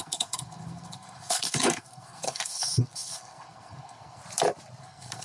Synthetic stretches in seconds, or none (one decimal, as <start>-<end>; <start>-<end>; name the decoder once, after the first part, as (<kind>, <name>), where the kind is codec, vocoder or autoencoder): 0.0-4.2 (codec, SNAC); 4.8-5.2